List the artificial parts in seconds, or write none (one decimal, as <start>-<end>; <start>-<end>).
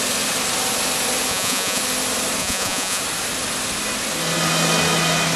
1.3-1.8; 2.4-3.0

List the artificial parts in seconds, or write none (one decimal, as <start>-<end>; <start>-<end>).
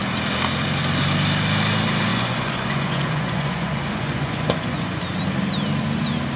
2.1-5.0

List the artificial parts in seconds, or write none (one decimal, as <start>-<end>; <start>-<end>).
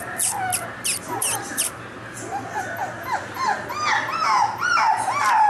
none